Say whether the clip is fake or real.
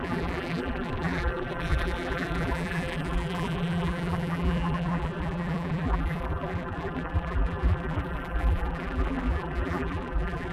fake